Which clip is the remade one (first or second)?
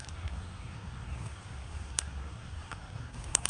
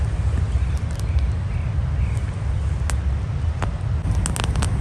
first